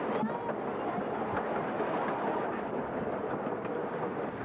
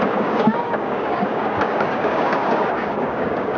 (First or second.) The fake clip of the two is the second